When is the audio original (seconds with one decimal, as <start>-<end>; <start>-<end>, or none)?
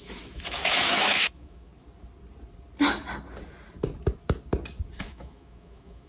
1.7-5.0